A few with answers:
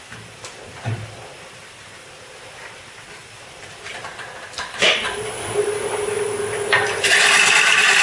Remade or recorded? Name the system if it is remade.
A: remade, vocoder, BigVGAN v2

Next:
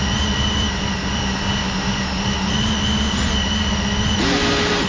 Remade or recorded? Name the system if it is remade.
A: recorded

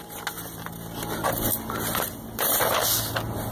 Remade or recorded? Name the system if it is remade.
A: recorded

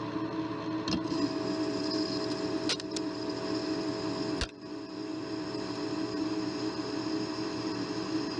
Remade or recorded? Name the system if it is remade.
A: recorded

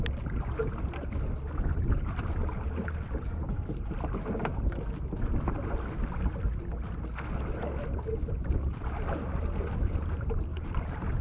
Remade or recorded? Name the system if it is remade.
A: recorded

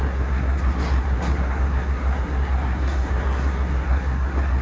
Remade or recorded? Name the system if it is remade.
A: remade, codec, SNAC